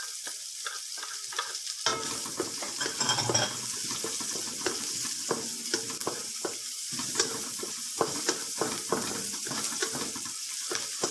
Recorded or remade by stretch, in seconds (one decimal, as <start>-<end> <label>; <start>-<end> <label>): 0.0-1.9 recorded; 1.9-2.8 remade; 2.8-6.0 recorded; 6.0-9.6 remade; 9.6-11.1 recorded